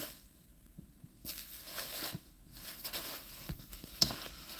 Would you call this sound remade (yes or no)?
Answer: yes